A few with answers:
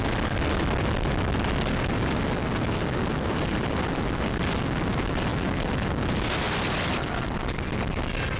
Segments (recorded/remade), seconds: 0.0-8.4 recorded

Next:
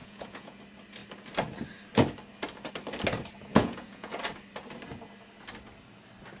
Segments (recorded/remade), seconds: 0.0-0.6 remade; 0.6-3.5 recorded; 3.5-4.2 remade; 4.2-6.4 recorded

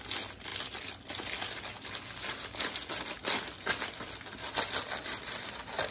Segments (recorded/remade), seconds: 0.0-5.9 recorded

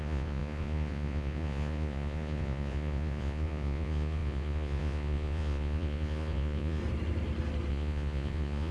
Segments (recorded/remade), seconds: 0.0-6.8 remade; 6.8-7.7 recorded; 7.7-8.7 remade